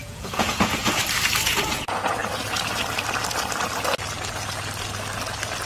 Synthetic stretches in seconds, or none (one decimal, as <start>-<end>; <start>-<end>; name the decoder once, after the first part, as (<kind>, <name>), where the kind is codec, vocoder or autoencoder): 0.0-0.8 (vocoder, Vocos); 1.5-2.2